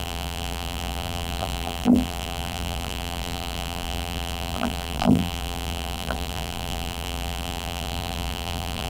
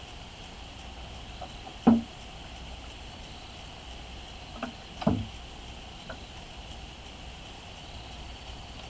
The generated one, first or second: first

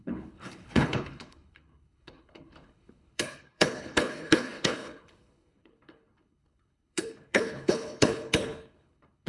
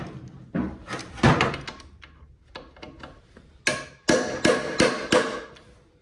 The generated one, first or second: first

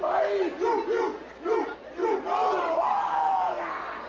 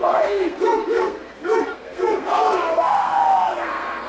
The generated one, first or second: second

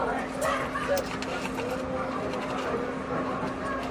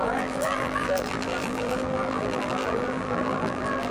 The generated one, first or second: second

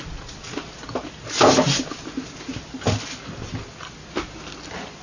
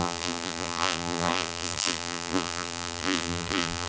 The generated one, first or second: second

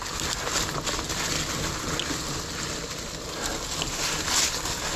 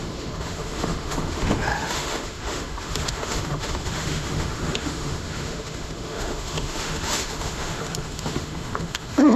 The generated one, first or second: second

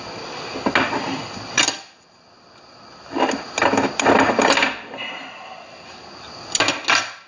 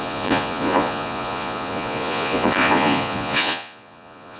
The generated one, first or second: second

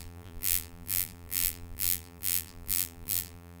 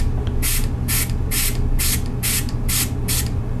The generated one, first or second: first